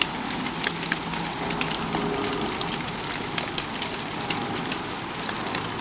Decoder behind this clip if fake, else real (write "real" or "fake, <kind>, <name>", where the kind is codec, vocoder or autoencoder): real